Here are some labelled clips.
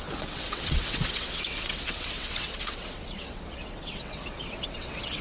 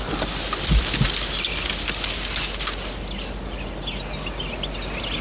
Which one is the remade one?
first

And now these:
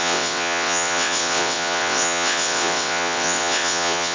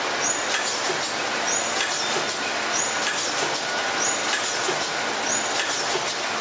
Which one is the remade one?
first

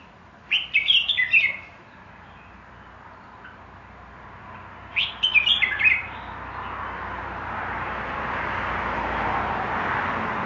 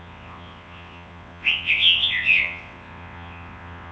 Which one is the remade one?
second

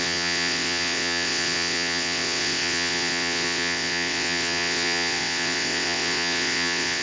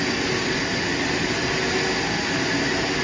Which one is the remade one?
first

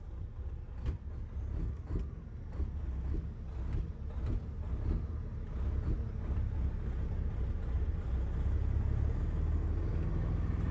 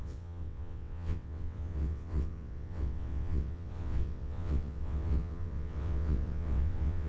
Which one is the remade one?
second